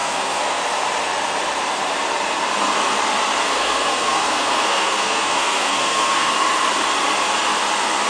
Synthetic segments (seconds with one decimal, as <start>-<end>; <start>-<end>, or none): 0.0-0.6; 3.4-6.3